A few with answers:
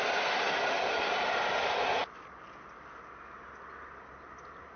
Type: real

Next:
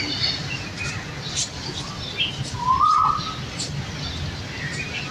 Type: real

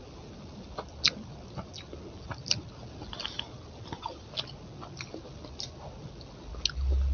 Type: real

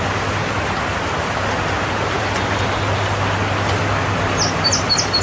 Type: real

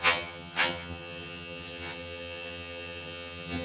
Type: fake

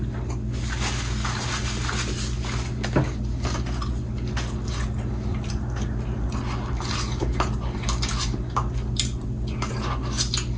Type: real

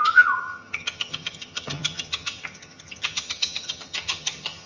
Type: fake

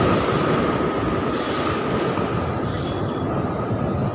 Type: real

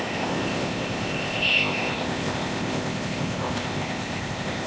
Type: fake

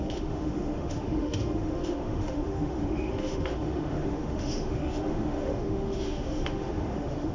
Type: fake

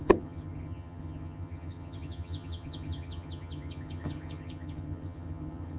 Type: fake